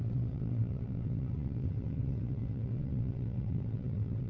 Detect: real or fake fake